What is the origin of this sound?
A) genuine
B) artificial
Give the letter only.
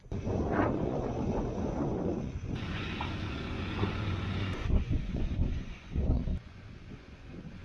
B